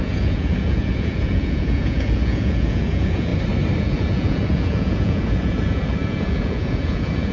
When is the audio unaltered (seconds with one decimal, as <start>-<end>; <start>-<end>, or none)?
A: 3.3-3.8